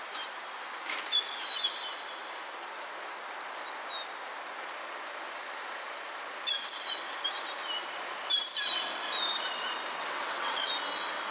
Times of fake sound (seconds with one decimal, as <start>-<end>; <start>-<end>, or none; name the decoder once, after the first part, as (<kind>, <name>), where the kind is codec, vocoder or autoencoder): 10.0-10.7 (vocoder, WaveNeXt)

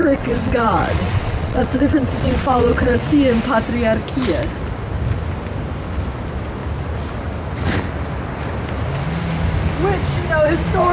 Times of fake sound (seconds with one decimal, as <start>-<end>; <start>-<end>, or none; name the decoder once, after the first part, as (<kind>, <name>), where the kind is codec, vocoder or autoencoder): 0.0-3.1 (vocoder, WaveNeXt)

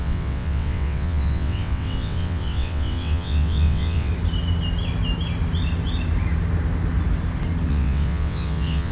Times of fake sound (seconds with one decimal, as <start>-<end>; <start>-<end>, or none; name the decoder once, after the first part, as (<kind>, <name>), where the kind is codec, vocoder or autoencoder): 0.0-4.1 (vocoder, WaveNeXt); 7.7-8.9

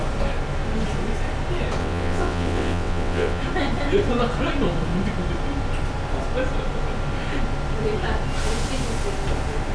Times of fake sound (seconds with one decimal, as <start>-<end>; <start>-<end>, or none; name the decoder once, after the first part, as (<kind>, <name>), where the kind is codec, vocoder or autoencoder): 1.8-3.4 (vocoder, WaveNeXt)

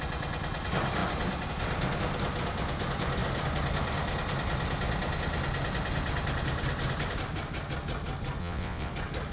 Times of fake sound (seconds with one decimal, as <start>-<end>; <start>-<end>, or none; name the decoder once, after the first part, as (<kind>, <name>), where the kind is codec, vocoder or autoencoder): 8.4-8.9 (vocoder, WaveNeXt)